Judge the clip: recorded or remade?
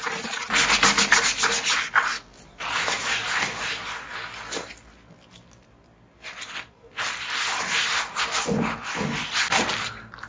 recorded